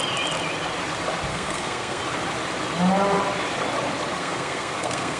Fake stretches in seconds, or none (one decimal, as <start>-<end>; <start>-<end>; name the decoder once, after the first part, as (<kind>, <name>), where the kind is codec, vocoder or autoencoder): 1.3-2.0 (codec, SNAC); 4.2-5.2